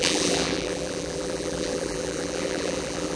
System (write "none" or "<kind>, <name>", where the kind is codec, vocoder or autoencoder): vocoder, BigVGAN v2